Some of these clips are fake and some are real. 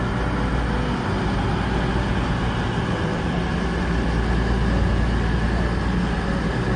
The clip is real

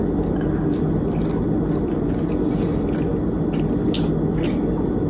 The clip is real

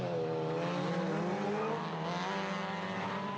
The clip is real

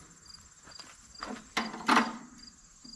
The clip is real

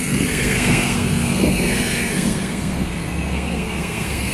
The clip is fake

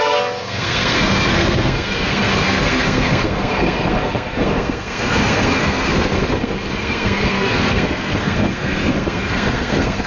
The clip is fake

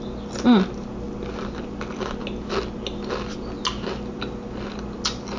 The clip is real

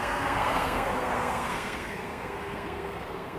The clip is fake